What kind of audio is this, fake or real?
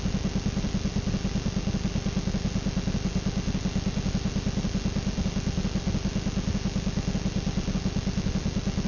real